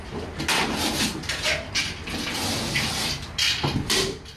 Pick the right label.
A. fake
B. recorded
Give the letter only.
B